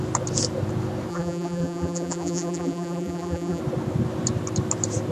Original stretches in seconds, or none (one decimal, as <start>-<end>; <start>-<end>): 0.0-1.1; 3.6-5.1